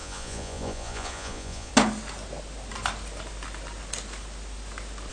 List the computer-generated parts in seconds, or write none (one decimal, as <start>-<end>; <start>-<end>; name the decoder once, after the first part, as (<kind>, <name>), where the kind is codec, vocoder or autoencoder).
0.0-1.7 (vocoder, Vocos)